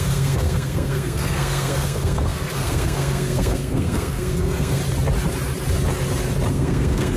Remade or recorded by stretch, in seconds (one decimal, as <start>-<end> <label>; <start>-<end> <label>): 0.0-4.8 remade; 4.8-6.5 recorded; 6.5-7.2 remade